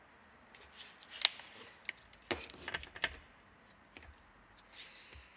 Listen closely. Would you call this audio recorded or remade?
recorded